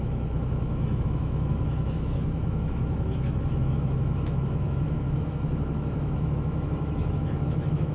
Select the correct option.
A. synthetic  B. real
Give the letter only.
A